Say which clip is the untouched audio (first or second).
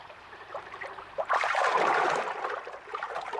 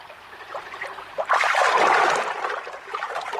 second